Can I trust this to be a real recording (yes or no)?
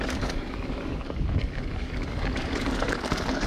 no